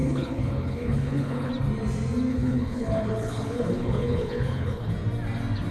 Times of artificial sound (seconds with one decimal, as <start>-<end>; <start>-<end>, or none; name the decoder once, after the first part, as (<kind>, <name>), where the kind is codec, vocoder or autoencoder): 0.0-1.5 (codec, HILCodec); 2.3-4.9